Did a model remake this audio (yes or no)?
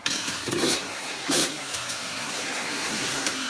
yes